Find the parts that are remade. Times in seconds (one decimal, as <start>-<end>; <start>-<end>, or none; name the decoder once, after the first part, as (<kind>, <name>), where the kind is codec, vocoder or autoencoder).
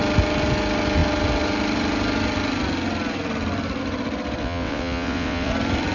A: 4.4-5.5 (vocoder, WaveNeXt)